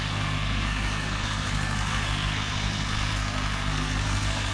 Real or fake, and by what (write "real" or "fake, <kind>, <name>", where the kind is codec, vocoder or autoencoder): fake, codec, SNAC